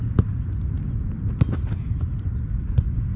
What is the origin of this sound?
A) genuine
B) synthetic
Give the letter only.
A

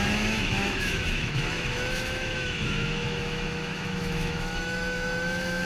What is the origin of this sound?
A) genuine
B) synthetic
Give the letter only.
B